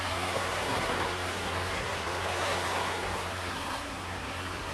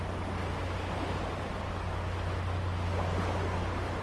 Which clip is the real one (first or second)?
second